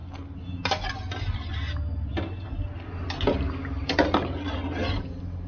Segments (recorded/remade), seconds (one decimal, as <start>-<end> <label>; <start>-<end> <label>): 0.0-5.5 recorded

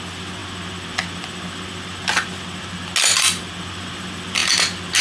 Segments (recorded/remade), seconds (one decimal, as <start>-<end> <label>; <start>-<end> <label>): 0.0-5.0 recorded

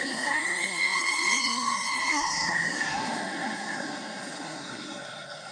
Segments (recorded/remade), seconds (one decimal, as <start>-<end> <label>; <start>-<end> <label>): 0.0-5.5 remade

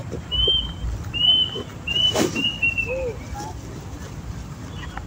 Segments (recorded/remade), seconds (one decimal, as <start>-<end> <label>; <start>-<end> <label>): 0.0-1.7 recorded; 1.7-5.1 remade

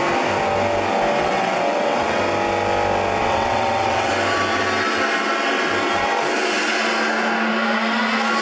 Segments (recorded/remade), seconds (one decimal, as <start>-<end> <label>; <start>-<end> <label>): 0.0-1.2 recorded; 1.2-2.2 remade; 2.2-3.2 recorded; 3.2-4.1 remade; 4.1-8.4 recorded

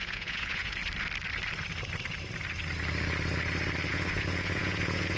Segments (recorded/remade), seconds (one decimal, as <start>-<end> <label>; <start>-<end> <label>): 0.0-0.8 remade; 0.8-3.9 recorded; 3.9-5.2 remade

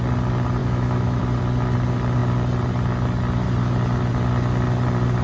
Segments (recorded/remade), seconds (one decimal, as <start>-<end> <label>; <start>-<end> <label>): 0.0-0.6 recorded; 0.6-1.2 remade; 1.2-5.2 recorded